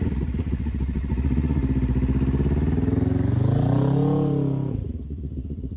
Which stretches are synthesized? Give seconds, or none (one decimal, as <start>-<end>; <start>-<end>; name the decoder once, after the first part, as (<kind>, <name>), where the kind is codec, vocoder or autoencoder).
0.0-1.6 (vocoder, Vocos); 4.7-5.8